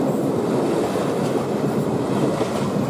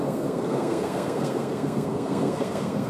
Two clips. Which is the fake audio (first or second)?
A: second